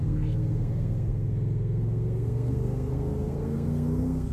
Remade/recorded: remade